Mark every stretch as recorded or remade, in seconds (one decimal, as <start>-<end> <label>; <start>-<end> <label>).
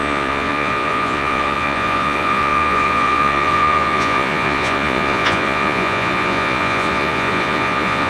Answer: 0.0-8.1 remade